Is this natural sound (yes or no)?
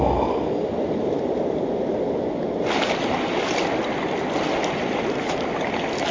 yes